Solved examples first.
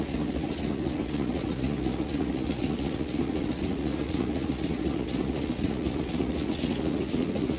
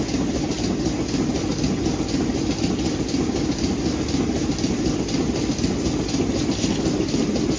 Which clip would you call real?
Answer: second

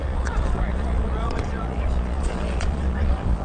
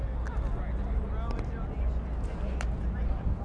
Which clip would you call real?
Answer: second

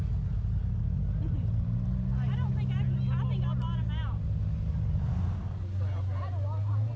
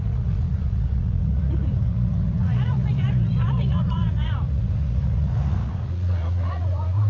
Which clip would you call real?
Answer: first